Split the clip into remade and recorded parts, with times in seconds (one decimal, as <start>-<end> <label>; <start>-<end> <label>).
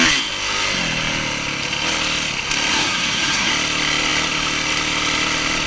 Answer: 0.0-2.7 recorded; 2.7-3.5 remade; 3.5-5.7 recorded